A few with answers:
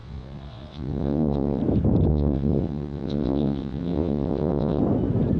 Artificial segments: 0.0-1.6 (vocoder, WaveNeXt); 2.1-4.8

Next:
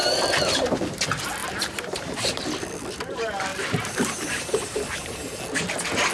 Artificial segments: 0.0-0.8 (vocoder, BigVGAN v2); 1.4-2.4; 3.5-5.4

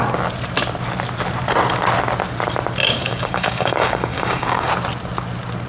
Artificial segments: 2.8-4.7 (codec, DAC)

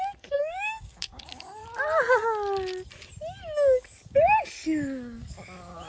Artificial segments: 0.0-1.6 (codec, DAC); 3.4-5.9

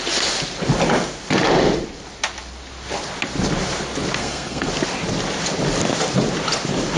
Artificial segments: 4.2-4.7 (codec, SNAC)

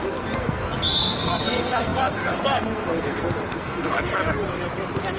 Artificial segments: 0.0-4.2 (codec, SNAC)

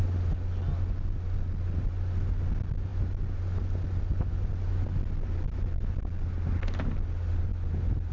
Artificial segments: none

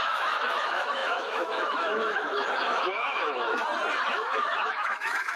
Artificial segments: 0.0-3.6 (autoencoder, DAC-VAE); 4.1-5.4